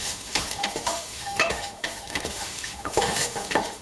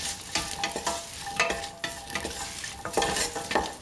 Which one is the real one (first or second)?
second